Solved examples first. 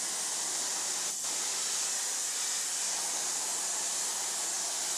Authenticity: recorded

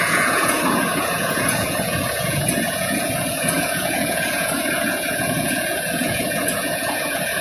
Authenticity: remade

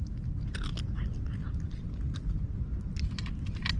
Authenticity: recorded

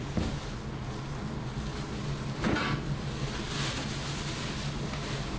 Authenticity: recorded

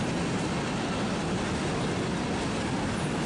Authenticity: recorded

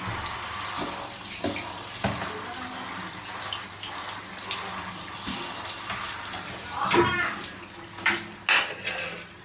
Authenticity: recorded